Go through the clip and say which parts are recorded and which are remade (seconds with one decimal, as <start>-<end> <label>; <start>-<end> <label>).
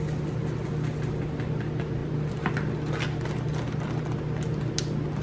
0.0-5.2 recorded